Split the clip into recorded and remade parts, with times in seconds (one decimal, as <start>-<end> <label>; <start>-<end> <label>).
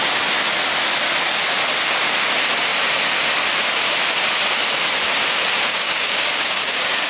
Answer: 0.0-5.7 recorded; 5.7-7.1 remade